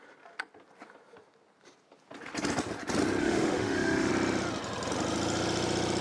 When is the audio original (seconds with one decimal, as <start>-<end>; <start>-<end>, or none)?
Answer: 0.0-3.2; 4.1-6.0